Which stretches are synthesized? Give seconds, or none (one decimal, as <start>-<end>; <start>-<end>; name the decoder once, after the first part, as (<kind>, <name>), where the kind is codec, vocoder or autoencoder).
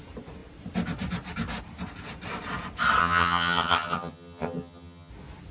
3.0-5.1 (vocoder, HiFi-GAN)